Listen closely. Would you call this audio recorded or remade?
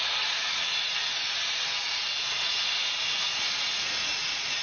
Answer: remade